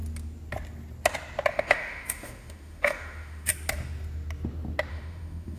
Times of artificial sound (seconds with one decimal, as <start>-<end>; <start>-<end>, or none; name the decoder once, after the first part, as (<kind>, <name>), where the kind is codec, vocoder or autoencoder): 1.5-3.5 (autoencoder, DAC-VAE); 4.9-5.6